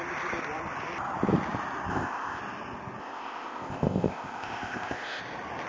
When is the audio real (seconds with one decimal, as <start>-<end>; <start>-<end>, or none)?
0.0-1.9; 2.4-3.0; 5.2-5.7

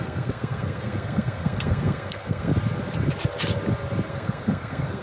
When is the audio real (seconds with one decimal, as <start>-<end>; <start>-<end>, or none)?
2.5-4.1